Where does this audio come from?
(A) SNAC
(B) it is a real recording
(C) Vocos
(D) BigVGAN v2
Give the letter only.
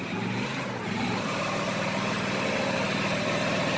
D